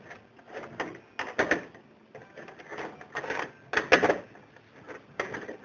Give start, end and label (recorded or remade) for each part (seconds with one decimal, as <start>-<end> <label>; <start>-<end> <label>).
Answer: 0.0-5.6 recorded